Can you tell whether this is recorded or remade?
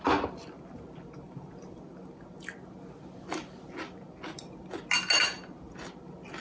recorded